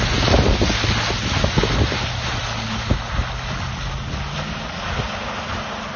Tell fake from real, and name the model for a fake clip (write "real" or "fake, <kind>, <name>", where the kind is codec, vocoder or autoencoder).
real